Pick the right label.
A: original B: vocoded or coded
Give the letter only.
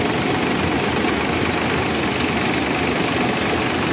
A